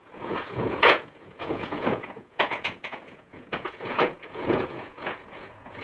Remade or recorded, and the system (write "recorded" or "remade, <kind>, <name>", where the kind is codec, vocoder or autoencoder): remade, vocoder, Vocos